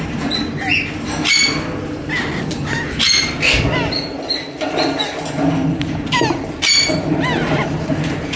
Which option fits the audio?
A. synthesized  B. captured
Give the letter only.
B